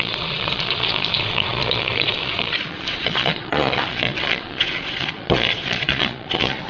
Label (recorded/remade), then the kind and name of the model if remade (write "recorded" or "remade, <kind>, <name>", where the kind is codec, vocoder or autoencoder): remade, vocoder, Vocos